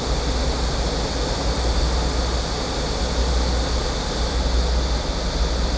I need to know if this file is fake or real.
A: real